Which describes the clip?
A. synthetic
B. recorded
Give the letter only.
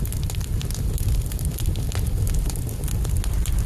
B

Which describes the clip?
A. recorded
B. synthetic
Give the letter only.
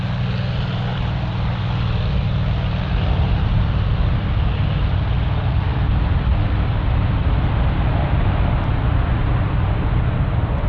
A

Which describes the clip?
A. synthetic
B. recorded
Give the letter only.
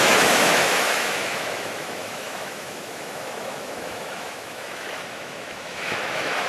A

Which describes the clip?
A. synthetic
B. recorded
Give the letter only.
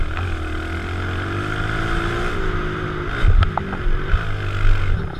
B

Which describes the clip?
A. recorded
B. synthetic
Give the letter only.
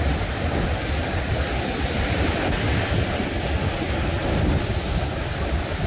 A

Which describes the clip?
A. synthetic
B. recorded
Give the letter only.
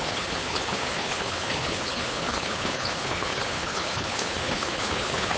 A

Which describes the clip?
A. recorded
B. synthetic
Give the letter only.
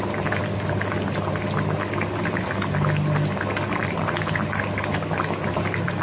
A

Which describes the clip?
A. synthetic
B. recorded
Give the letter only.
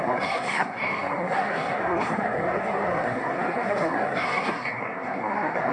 A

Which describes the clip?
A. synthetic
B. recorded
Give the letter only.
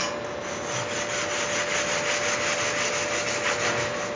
B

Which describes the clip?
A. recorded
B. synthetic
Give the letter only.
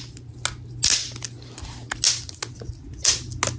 A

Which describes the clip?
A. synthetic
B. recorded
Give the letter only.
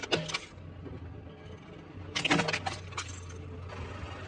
B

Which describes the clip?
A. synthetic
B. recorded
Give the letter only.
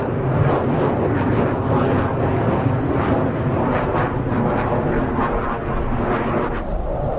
B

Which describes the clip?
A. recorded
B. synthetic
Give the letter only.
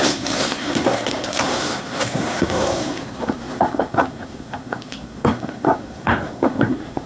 B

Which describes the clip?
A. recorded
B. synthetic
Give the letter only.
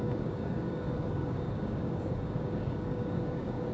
B